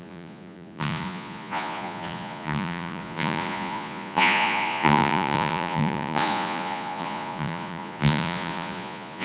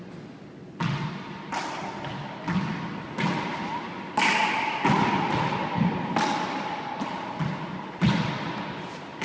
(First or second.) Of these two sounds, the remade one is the first